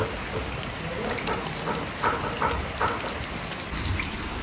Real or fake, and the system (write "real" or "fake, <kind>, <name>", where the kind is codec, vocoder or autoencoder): real